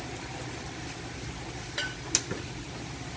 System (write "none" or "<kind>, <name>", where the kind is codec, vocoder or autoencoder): none